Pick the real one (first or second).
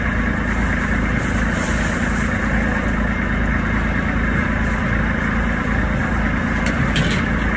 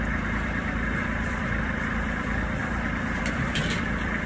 first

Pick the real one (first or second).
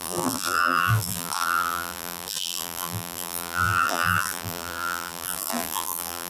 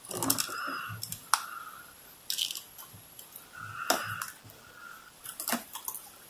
second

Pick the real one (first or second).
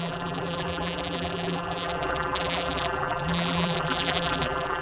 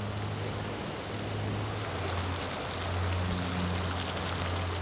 second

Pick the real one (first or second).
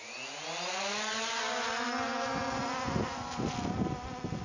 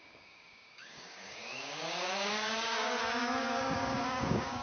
first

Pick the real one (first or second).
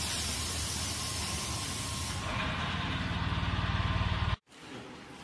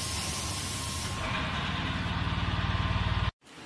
second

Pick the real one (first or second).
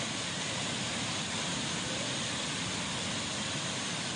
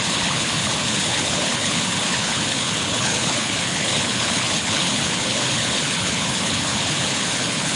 first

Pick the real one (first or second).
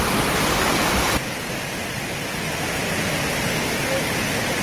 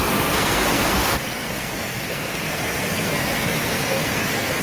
first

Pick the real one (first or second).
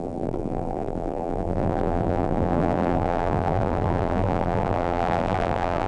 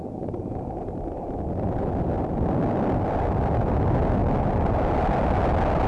second